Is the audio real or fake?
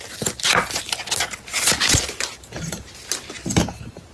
real